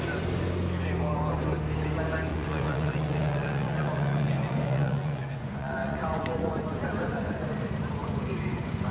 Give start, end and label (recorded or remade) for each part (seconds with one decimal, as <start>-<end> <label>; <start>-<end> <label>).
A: 0.0-2.3 recorded; 2.3-7.5 remade; 7.5-8.0 recorded; 8.0-8.9 remade